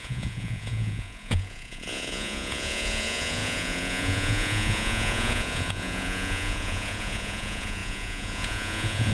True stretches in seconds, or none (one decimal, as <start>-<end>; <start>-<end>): none